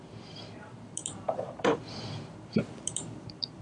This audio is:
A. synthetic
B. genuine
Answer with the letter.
A